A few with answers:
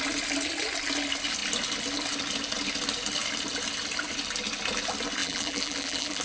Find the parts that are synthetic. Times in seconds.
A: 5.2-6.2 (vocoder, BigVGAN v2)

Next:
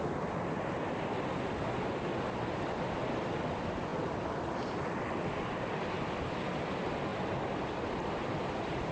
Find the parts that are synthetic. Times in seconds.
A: none

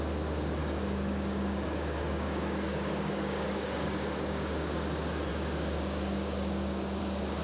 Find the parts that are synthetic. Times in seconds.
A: 0.6-4.7 (codec, DAC); 5.3-7.0

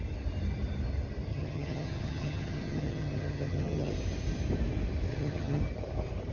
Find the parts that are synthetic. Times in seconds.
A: 1.3-3.9 (vocoder, HiFi-GAN); 5.1-5.6

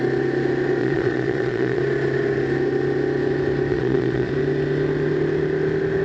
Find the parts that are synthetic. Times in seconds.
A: 0.8-1.8 (vocoder, Vocos); 3.7-4.3

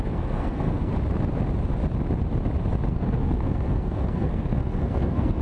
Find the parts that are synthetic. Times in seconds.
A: 0.0-0.9 (codec, SNAC); 2.9-5.4